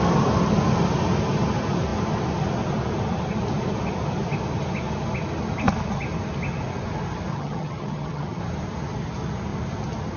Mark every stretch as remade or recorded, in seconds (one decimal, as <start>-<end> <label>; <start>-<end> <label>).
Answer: 0.0-7.3 recorded; 7.3-8.4 remade; 8.4-10.2 recorded